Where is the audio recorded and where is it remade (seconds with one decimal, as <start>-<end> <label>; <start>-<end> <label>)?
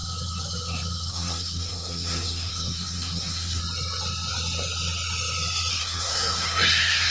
0.0-1.1 recorded; 1.1-3.6 remade; 3.6-5.7 recorded; 5.7-7.1 remade